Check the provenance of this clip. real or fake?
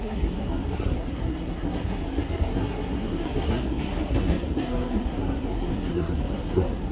fake